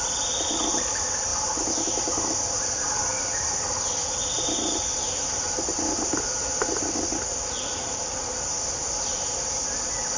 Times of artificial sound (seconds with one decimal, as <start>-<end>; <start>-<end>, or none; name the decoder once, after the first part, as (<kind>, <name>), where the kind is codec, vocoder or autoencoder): none